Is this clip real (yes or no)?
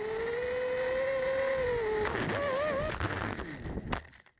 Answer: yes